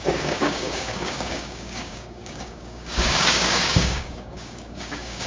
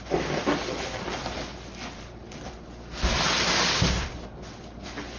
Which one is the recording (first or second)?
second